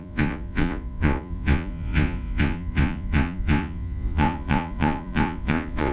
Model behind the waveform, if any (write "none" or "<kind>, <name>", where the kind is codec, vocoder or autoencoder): vocoder, Vocos